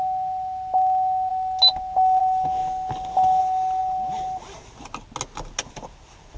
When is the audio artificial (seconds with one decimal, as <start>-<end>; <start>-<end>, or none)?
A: none